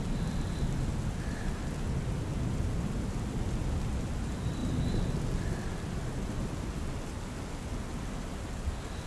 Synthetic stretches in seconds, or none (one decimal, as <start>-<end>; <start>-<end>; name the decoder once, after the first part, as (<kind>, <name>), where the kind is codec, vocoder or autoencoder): none